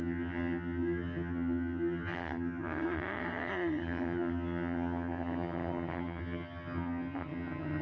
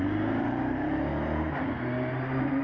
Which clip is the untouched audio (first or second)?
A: second